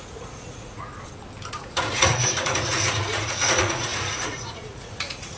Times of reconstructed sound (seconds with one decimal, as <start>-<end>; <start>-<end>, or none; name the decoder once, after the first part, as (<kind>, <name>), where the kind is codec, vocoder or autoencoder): 0.0-0.9 (vocoder, Vocos); 1.5-5.4